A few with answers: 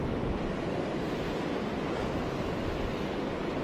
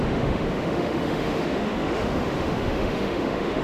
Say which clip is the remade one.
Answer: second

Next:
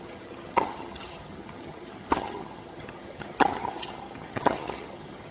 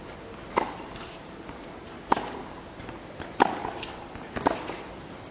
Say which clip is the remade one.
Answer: first